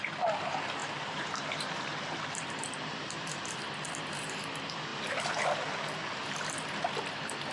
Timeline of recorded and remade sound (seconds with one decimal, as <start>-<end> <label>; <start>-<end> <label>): 0.0-0.8 recorded; 0.8-3.5 remade; 3.5-7.5 recorded